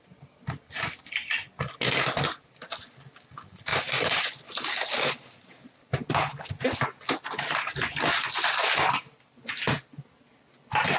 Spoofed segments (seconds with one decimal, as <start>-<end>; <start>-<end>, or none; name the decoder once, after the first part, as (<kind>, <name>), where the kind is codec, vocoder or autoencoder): 3.7-4.4 (vocoder, Vocos)